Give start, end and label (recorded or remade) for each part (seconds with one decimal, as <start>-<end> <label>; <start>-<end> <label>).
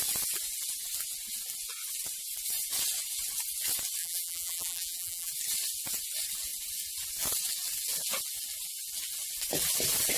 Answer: 0.0-4.0 recorded; 4.0-5.3 remade; 5.3-10.2 recorded